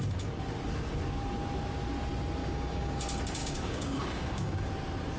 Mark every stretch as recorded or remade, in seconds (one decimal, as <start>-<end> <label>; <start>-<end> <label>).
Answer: 0.0-2.4 recorded; 2.4-3.0 remade; 3.0-3.4 recorded; 3.4-4.7 remade; 4.7-5.2 recorded